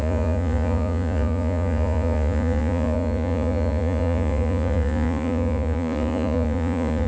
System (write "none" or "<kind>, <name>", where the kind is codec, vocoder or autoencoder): vocoder, Vocos